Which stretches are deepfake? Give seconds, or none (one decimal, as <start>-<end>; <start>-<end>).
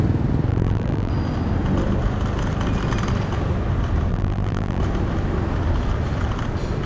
0.5-1.1; 4.1-4.8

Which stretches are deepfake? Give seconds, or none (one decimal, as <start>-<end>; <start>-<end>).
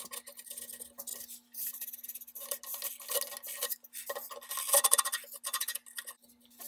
none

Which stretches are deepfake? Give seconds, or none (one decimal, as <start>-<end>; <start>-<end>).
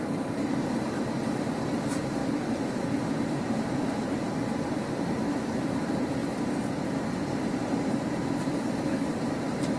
0.0-2.2; 3.3-6.2; 7.5-9.8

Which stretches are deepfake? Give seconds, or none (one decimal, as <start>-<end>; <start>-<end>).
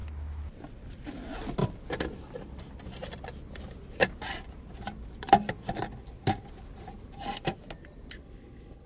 8.2-8.9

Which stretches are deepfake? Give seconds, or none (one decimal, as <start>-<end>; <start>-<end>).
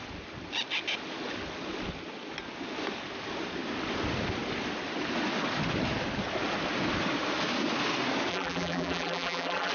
8.3-9.7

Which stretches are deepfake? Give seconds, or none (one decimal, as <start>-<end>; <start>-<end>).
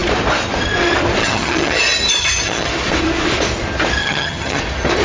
1.2-1.8; 2.2-2.7; 4.0-4.6